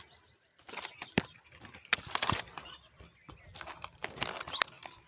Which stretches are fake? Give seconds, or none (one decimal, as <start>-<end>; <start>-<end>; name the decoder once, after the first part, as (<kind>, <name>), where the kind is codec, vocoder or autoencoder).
none